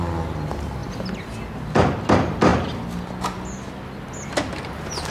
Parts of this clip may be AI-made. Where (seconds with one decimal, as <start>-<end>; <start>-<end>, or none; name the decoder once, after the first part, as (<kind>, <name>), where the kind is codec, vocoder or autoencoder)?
none